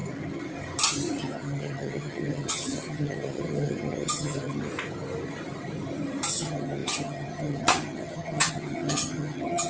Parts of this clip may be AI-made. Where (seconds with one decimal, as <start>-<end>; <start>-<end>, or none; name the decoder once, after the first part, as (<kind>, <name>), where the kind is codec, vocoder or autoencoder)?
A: 1.2-4.7 (vocoder, HiFi-GAN); 6.3-9.7